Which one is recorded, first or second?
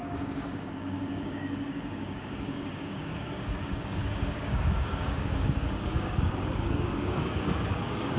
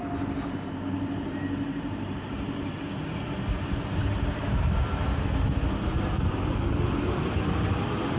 second